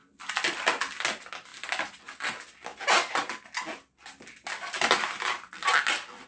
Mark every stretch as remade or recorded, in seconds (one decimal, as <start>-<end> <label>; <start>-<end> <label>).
0.0-6.3 recorded